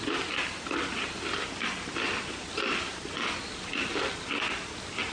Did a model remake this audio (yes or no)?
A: no